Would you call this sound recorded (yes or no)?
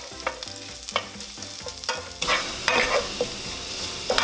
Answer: yes